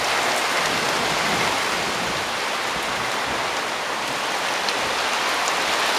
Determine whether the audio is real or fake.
real